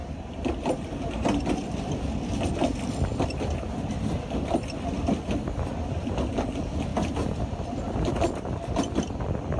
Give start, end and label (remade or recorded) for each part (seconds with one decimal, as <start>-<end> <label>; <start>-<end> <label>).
0.0-9.6 recorded